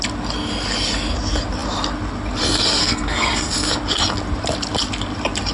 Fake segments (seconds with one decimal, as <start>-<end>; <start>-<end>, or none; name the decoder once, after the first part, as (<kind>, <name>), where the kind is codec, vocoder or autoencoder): 2.8-3.5 (codec, SNAC)